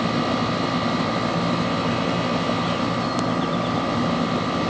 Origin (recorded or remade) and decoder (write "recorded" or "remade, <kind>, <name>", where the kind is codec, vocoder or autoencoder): recorded